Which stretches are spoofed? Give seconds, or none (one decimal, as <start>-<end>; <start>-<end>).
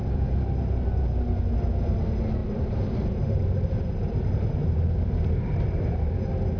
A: 2.4-6.1